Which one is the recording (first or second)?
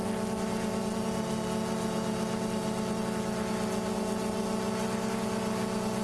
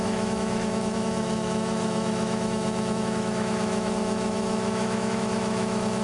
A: first